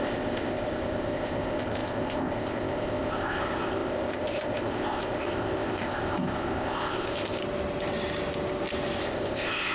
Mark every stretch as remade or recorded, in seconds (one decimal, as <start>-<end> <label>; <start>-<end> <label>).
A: 0.0-7.4 remade; 7.4-9.0 recorded; 9.0-9.7 remade